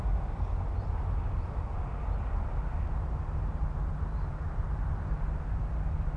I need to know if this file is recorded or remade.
recorded